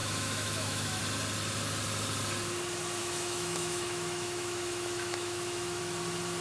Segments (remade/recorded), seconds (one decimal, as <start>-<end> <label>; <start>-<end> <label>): 0.0-1.0 remade; 1.0-3.0 recorded; 3.0-5.8 remade; 5.8-6.4 recorded